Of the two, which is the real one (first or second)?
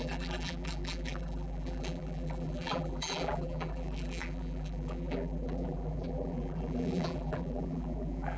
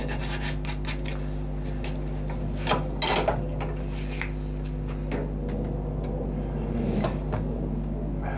second